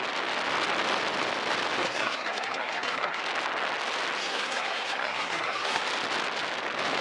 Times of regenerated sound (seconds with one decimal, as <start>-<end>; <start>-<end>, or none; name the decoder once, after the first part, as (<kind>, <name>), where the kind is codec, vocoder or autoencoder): 1.8-3.2 (codec, SNAC); 4.2-5.8